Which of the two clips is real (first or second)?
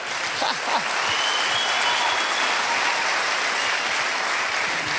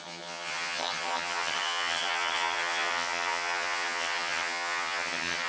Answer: first